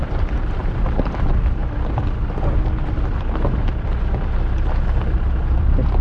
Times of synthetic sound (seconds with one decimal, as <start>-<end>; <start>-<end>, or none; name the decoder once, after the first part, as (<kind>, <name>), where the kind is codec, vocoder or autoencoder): 0.0-1.6 (vocoder, BigVGAN v2); 4.3-6.0